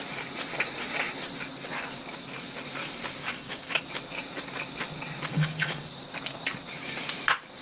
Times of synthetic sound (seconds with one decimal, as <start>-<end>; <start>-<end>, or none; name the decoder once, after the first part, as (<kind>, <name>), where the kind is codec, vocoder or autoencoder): 3.2-3.8 (codec, DAC); 5.3-5.9